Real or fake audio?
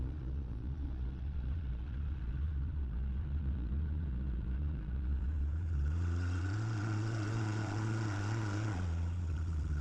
fake